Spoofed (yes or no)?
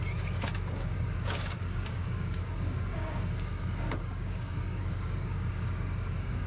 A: yes